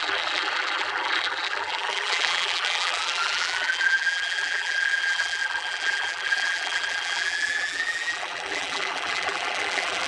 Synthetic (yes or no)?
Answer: yes